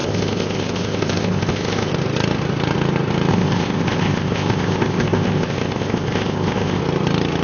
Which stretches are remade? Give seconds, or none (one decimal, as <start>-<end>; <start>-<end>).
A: 0.0-1.9; 3.3-6.8